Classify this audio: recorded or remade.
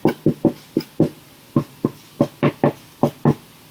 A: recorded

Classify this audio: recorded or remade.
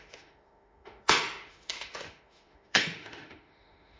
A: remade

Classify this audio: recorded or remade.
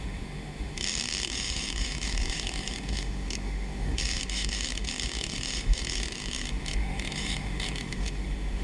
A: remade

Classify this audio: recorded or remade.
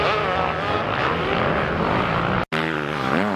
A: recorded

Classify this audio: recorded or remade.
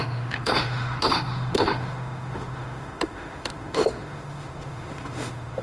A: remade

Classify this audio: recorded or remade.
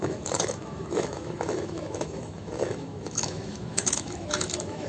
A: remade